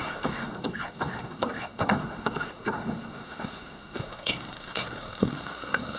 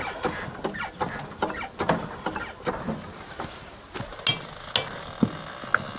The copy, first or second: first